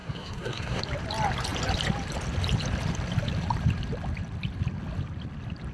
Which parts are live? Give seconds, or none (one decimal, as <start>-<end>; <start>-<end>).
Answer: 0.8-5.7